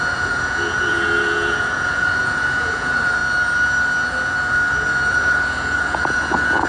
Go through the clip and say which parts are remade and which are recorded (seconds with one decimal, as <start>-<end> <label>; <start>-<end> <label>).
0.0-3.2 remade; 3.2-5.1 recorded; 5.1-6.7 remade